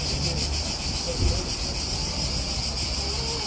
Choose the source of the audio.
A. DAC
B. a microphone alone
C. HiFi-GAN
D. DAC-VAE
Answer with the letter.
B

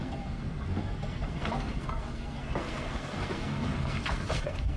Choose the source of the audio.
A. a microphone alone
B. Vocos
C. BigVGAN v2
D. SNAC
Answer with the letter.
D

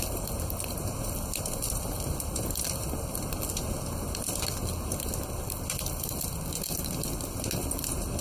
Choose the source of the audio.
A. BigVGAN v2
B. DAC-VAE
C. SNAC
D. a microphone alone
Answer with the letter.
D